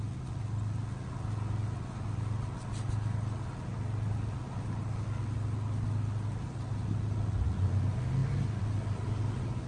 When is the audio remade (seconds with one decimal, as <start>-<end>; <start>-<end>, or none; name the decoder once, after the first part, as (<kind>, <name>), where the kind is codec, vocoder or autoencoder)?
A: none